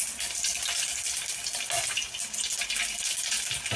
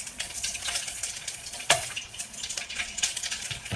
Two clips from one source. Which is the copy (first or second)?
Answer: second